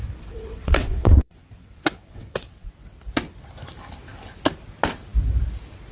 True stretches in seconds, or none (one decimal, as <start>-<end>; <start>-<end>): 2.7-5.9